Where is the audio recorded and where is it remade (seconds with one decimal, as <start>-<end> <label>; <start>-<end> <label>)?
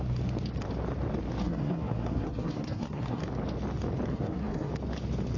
0.0-1.4 recorded; 1.4-3.2 remade; 3.2-4.1 recorded; 4.1-4.7 remade; 4.7-5.4 recorded